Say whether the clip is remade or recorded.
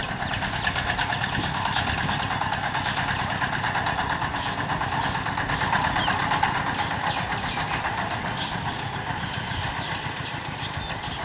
recorded